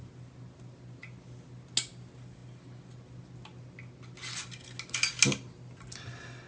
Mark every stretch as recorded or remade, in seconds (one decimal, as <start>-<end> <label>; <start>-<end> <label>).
0.0-6.5 recorded